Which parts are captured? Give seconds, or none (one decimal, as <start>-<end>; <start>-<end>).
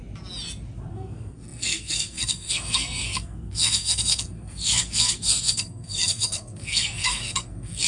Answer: 0.0-0.9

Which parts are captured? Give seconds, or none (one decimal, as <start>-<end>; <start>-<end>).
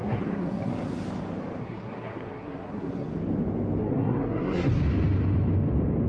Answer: 0.7-1.6; 3.1-3.8; 4.8-6.1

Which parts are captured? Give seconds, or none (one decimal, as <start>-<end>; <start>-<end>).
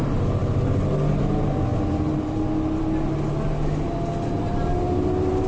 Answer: 0.0-5.5